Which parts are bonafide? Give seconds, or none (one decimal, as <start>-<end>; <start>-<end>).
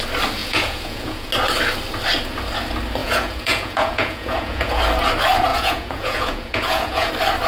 0.0-0.4; 1.3-3.0; 4.8-5.5; 7.1-7.5